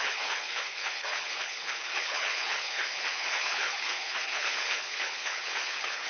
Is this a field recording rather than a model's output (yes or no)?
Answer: no